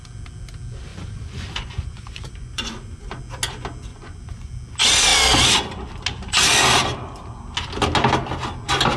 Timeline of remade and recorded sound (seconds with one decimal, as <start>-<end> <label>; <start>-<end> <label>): 0.0-0.9 recorded; 0.9-3.2 remade; 3.2-3.9 recorded; 3.9-4.5 remade; 4.5-9.0 recorded